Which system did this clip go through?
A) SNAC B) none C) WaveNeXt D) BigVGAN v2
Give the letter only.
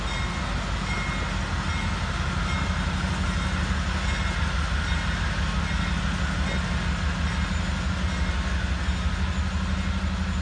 B